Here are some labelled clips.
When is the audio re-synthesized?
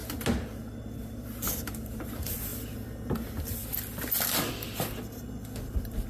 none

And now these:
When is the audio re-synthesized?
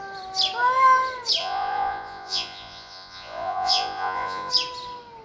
1.4-4.5 (vocoder, Vocos)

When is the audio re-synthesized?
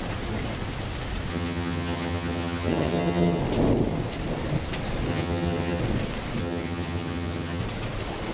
1.3-3.4 (vocoder, HiFi-GAN); 5.1-5.8; 6.4-7.6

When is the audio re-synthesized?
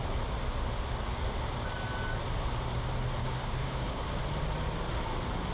3.2-4.2 (codec, DAC)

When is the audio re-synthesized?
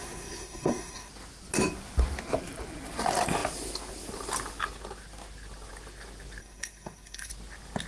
0.0-1.1 (codec, SNAC); 6.4-7.3